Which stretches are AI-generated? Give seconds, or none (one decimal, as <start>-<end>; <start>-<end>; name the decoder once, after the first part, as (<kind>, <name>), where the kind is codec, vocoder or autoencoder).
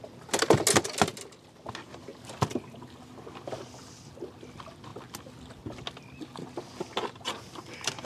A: none